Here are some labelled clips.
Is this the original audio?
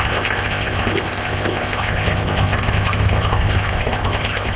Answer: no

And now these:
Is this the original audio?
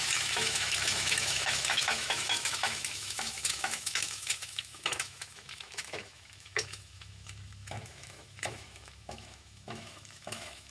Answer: no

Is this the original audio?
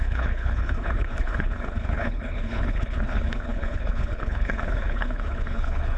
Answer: no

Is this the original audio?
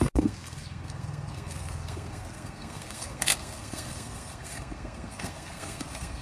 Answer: no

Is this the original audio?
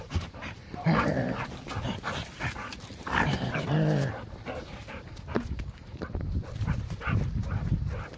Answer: no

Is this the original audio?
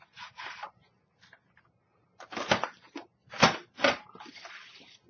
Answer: yes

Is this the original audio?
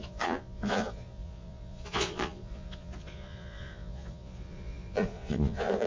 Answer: no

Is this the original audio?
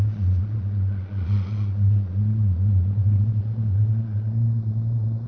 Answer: no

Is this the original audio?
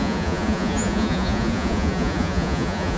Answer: no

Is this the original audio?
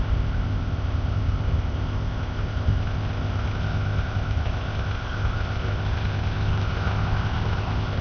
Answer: no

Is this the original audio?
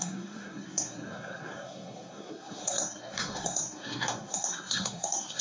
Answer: no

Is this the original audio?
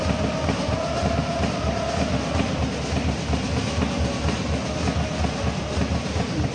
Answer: yes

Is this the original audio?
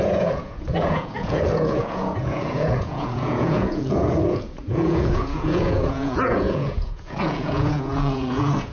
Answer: no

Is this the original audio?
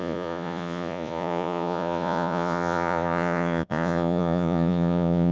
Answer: no